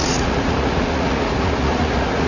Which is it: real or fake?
fake